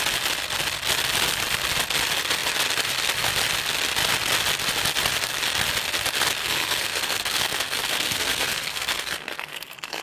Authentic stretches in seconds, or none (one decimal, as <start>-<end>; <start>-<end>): 0.0-6.4